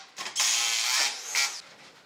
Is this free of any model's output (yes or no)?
yes